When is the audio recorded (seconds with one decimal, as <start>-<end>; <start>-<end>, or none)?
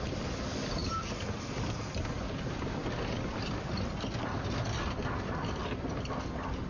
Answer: 0.0-6.7